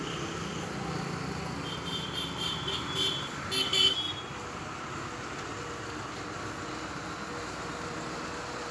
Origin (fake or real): real